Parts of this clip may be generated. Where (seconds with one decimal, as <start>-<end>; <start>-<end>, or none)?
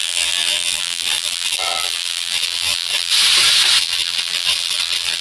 0.0-3.1; 3.8-5.2